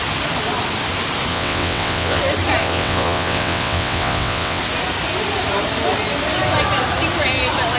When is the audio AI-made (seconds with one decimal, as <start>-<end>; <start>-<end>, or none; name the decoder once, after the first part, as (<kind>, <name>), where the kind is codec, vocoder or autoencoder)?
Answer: 1.3-2.2 (vocoder, WaveNeXt); 2.6-4.6